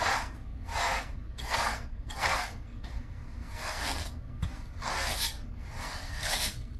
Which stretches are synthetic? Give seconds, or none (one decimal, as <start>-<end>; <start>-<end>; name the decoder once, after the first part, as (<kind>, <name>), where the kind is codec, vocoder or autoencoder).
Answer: 0.0-6.8 (codec, SNAC)